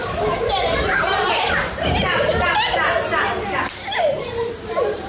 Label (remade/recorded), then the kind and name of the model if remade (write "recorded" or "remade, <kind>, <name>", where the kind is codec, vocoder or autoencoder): remade, vocoder, BigVGAN v2